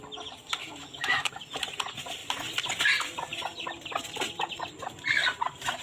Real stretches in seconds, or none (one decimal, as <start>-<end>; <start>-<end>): 0.0-0.6; 1.3-5.8